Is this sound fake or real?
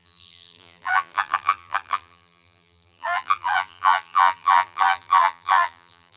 fake